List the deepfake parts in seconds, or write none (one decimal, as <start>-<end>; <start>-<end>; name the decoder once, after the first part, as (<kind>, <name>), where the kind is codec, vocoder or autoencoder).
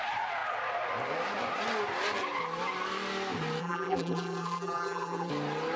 3.6-5.3 (vocoder, BigVGAN v2)